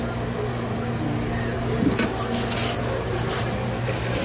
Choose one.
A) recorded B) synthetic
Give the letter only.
A